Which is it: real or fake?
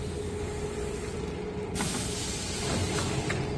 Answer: real